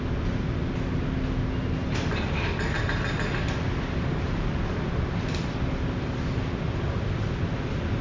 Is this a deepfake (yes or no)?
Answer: no